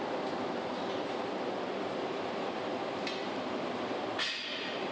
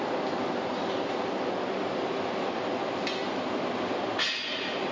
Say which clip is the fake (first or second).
first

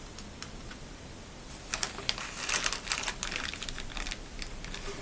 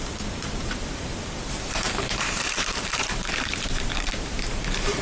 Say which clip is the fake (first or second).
second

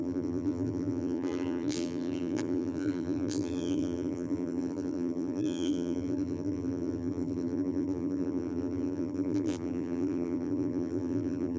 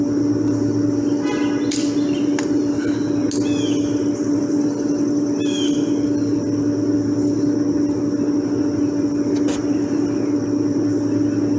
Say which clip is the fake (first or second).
first